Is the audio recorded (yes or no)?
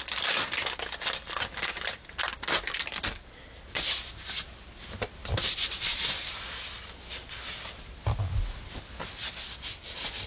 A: yes